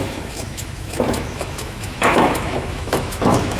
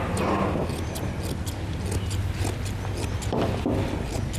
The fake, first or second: first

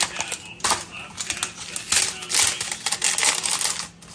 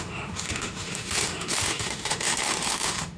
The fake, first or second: second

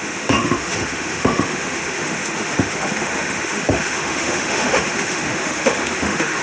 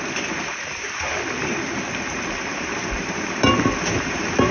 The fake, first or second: first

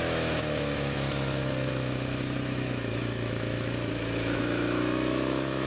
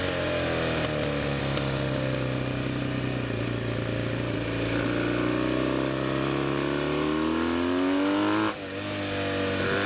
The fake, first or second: first